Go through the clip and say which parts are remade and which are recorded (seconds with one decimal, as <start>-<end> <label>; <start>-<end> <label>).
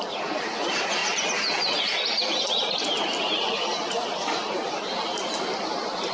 0.0-6.1 recorded